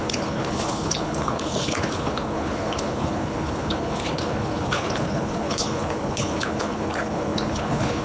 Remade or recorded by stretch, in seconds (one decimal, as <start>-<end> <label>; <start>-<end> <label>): 0.0-8.0 remade